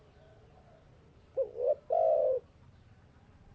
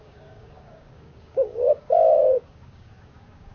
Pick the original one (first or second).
first